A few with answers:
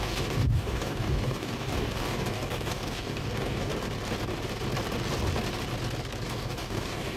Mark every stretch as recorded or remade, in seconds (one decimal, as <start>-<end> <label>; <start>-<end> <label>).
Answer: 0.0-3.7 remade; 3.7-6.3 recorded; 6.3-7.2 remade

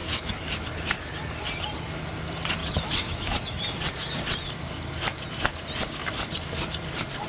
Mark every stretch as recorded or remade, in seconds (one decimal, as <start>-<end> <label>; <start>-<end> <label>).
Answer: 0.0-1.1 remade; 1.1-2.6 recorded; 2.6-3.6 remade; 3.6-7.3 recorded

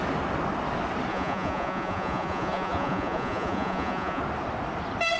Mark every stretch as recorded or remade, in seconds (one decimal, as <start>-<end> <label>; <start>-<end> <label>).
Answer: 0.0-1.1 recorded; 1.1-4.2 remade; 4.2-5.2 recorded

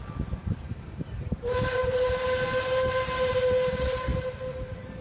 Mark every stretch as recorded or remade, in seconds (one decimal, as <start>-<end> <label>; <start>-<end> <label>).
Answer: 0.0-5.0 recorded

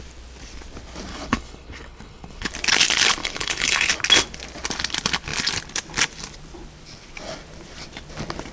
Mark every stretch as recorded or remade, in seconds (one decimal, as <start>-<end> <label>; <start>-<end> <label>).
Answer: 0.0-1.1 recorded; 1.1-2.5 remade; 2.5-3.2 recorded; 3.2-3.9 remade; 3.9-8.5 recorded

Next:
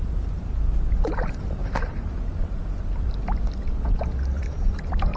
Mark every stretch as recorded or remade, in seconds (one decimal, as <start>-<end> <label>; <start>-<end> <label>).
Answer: 0.0-1.6 remade; 1.6-4.4 recorded; 4.4-5.2 remade